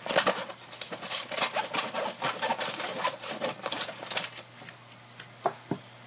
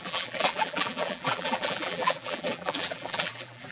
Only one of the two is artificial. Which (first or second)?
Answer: second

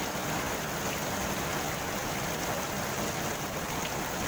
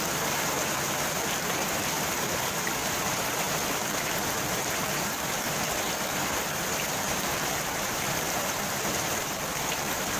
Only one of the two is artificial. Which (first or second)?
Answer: second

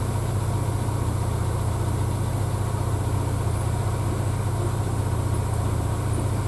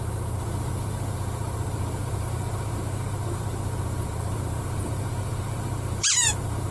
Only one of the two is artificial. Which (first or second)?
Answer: second